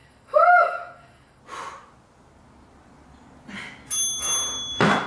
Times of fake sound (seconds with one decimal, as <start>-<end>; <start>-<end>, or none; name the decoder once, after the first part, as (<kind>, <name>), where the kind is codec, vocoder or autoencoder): 0.0-1.4 (codec, DAC)